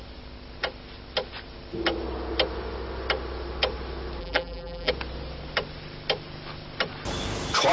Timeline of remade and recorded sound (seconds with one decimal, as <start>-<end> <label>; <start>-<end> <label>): 0.0-4.2 recorded; 4.2-4.9 remade; 4.9-7.7 recorded